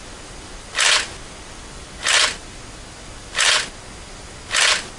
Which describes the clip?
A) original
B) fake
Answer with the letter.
A